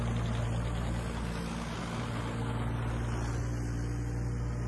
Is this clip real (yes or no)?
yes